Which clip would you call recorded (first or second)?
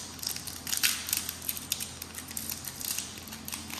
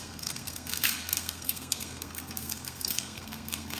first